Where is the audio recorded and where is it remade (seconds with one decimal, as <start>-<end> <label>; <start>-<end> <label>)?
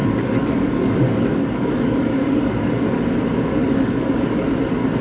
0.0-3.0 remade; 3.0-3.6 recorded; 3.6-4.5 remade; 4.5-5.0 recorded